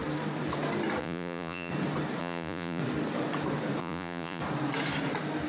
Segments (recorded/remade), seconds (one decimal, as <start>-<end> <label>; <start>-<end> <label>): 0.0-1.0 recorded; 1.0-1.7 remade; 1.7-2.2 recorded; 2.2-2.8 remade; 2.8-3.8 recorded; 3.8-4.4 remade; 4.4-5.5 recorded